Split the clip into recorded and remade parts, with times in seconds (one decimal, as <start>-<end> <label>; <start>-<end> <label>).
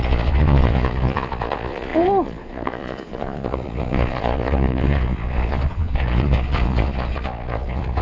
0.0-8.0 remade